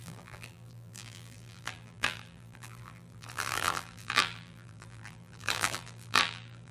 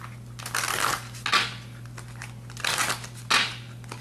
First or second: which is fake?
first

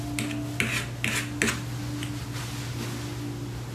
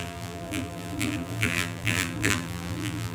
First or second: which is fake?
second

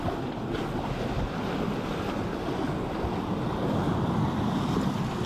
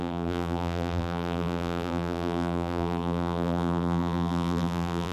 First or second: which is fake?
second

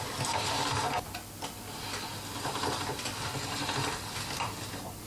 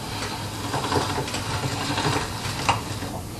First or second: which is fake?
second